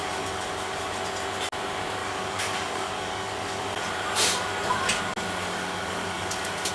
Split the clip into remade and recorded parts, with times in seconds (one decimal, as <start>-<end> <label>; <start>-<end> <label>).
0.0-1.0 remade; 1.0-2.0 recorded; 2.0-3.8 remade; 3.8-5.4 recorded; 5.4-6.7 remade